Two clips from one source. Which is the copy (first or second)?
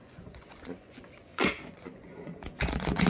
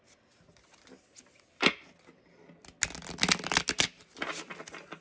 first